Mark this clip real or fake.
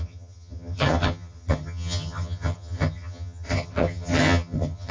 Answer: fake